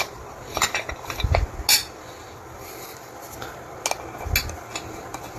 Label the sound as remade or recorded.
recorded